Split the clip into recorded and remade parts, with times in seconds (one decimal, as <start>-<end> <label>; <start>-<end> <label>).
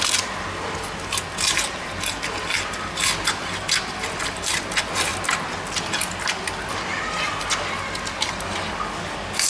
0.0-9.5 recorded